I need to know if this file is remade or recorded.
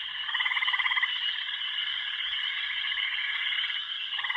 remade